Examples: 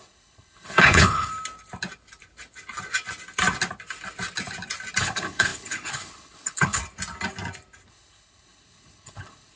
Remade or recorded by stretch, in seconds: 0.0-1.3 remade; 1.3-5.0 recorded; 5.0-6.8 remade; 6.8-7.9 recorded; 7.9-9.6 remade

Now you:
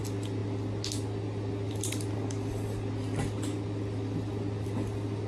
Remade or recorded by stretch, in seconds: 0.0-5.3 recorded

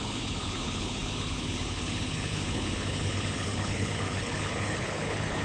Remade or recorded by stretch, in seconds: 0.0-5.4 remade